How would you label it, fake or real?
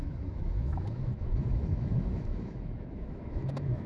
fake